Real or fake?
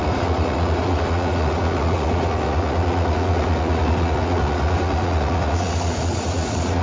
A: fake